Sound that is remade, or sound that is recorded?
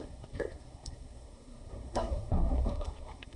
remade